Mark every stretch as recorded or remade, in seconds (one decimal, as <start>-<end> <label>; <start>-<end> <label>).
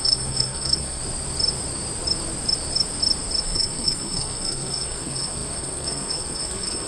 0.0-1.0 remade; 1.0-3.4 recorded; 3.4-6.9 remade